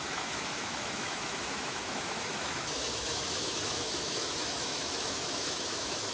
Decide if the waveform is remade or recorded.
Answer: remade